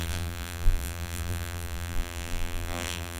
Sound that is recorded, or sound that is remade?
remade